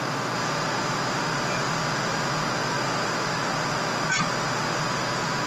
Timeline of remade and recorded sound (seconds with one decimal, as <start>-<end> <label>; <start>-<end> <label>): 0.0-5.5 recorded